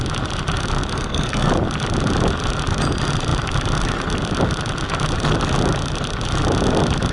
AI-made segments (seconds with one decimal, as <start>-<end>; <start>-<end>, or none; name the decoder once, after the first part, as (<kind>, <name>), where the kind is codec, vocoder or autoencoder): 0.9-1.5 (codec, SNAC)